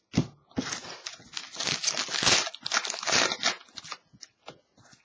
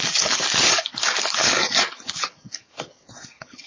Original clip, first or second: first